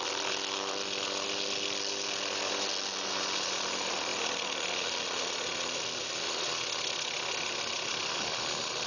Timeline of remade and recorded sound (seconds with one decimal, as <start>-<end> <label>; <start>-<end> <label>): 0.0-8.9 recorded